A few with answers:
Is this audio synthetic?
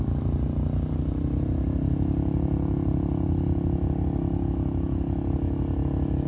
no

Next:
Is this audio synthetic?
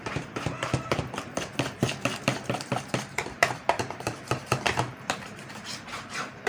yes